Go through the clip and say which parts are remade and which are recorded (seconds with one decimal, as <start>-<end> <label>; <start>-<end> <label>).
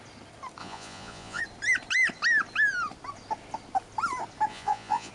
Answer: 0.0-0.6 recorded; 0.6-1.4 remade; 1.4-4.5 recorded; 4.5-5.1 remade